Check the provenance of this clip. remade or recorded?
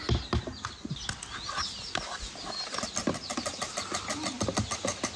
recorded